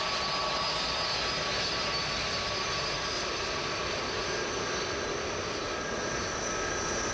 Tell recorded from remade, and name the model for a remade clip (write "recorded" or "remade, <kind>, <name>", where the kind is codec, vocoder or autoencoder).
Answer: recorded